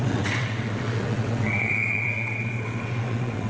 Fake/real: fake